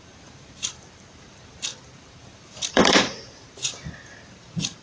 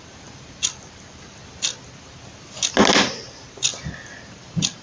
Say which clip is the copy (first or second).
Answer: first